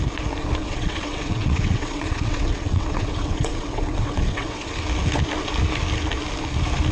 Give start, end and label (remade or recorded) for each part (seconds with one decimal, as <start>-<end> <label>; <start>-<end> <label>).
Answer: 0.0-0.6 recorded; 0.6-4.7 remade; 4.7-6.9 recorded